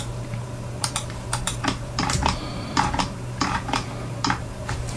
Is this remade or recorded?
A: remade